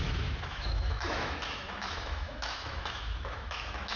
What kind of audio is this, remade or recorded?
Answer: remade